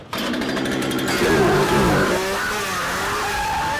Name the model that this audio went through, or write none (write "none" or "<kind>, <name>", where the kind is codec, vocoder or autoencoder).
none